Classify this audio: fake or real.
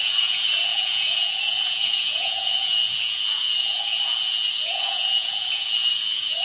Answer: fake